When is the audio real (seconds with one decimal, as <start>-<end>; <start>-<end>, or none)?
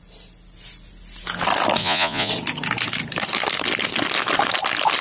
0.0-1.8; 2.3-5.0